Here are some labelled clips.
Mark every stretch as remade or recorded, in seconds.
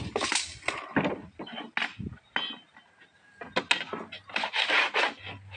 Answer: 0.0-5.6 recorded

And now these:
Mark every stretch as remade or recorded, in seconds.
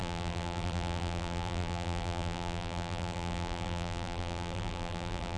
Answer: 0.0-5.4 remade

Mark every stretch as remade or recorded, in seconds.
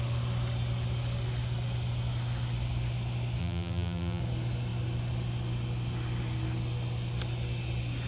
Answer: 0.0-3.4 recorded; 3.4-4.2 remade; 4.2-8.1 recorded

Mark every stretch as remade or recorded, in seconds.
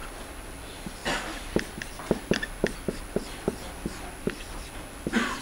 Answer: 0.0-5.4 recorded